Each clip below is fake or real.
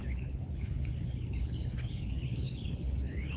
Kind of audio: fake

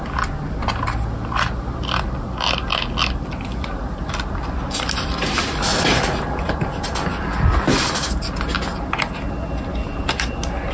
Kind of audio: real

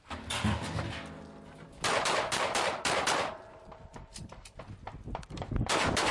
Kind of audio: real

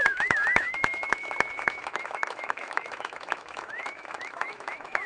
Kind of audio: fake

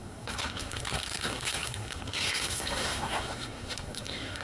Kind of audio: fake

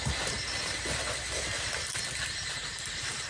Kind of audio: real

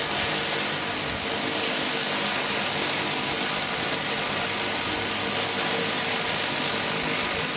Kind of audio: real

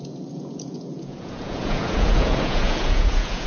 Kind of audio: fake